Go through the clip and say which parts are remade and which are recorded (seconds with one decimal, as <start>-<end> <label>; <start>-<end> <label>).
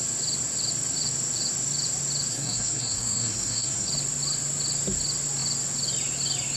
0.0-2.3 recorded; 2.3-3.9 remade; 3.9-6.6 recorded